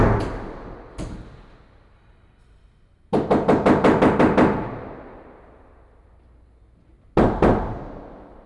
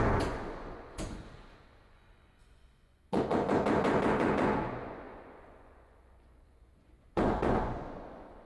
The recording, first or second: first